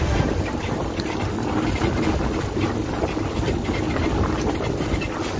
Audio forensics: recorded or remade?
recorded